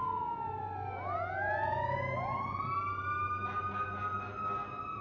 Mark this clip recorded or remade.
recorded